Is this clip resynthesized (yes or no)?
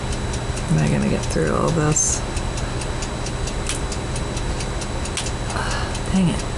no